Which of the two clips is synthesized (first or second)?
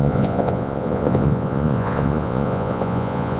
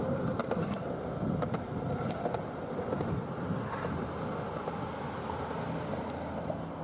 first